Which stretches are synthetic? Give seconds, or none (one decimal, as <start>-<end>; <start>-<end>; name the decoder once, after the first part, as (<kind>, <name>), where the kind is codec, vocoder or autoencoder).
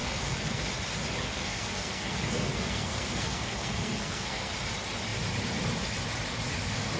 0.0-0.6 (codec, SNAC); 1.2-4.5